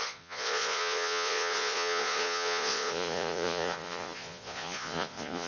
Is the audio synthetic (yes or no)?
yes